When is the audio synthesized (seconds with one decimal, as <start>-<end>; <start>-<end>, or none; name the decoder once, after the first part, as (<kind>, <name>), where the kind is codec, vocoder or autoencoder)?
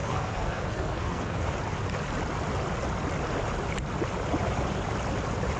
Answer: 0.0-1.5 (codec, SNAC)